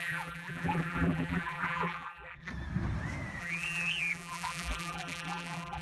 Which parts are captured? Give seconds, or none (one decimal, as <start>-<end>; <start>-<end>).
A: 2.5-3.4